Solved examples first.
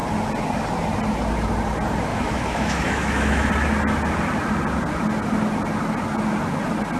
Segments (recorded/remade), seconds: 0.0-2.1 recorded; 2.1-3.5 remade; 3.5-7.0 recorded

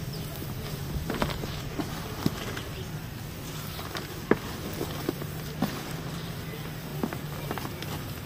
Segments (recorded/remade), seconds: 0.0-8.3 recorded